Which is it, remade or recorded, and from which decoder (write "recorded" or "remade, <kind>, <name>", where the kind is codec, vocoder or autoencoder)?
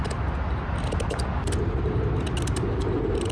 recorded